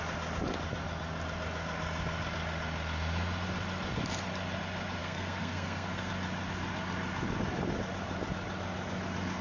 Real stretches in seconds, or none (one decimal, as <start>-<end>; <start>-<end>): 0.0-5.0; 6.1-9.4